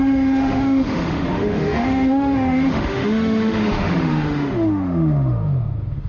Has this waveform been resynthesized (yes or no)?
yes